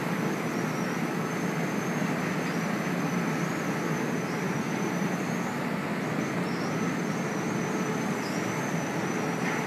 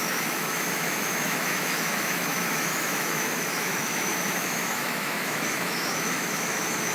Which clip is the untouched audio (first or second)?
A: first